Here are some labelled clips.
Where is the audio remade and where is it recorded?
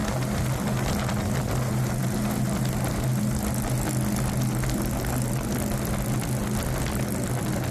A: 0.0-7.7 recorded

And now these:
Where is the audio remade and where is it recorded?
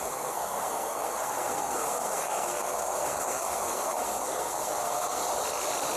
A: 0.0-5.2 remade; 5.2-6.0 recorded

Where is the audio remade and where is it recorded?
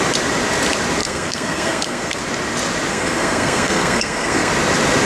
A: 0.0-1.0 recorded; 1.0-2.2 remade; 2.2-2.9 recorded; 2.9-4.5 remade; 4.5-5.0 recorded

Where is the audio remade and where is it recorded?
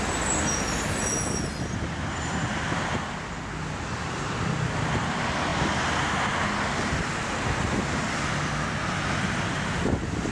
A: 0.0-10.3 recorded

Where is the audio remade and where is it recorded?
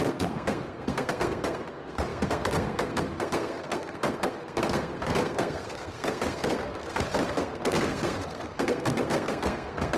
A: 0.0-10.0 remade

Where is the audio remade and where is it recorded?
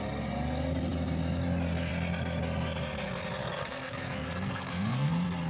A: 0.0-3.4 recorded; 3.4-5.1 remade; 5.1-5.5 recorded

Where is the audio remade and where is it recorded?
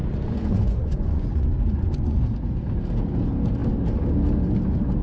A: 0.0-2.2 remade; 2.2-5.0 recorded